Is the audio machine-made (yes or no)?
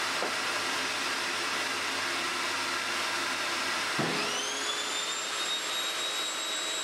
no